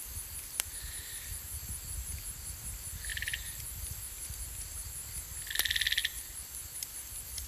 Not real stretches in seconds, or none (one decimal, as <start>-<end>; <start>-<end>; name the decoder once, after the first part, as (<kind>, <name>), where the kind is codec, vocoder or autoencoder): 6.0-7.5 (vocoder, BigVGAN v2)